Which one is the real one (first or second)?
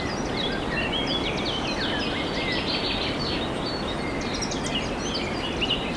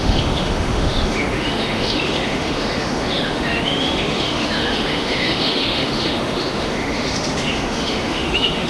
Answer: first